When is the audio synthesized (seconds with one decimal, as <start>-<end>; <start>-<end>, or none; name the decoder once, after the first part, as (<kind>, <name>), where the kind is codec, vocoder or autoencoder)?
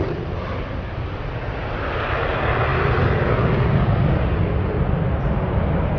none